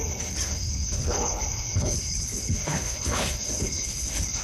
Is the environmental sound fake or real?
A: fake